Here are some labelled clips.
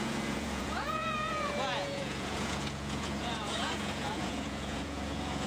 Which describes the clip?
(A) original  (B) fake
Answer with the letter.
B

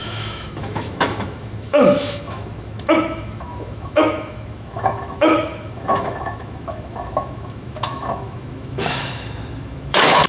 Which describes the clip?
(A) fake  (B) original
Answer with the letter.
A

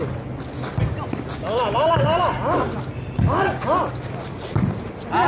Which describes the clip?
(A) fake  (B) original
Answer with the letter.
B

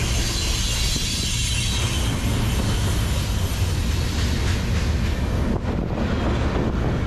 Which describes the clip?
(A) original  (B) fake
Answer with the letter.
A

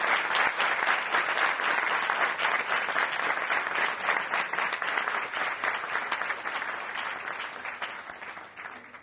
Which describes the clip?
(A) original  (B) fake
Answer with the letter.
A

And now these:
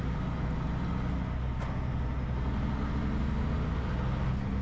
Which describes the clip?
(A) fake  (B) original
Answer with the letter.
B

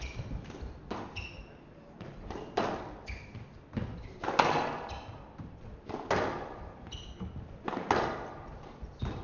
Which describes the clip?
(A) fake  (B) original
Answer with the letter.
B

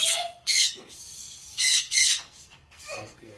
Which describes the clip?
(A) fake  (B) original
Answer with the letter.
A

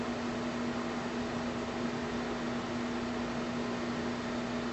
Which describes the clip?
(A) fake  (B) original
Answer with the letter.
B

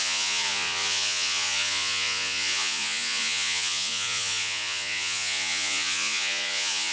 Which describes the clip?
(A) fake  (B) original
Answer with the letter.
A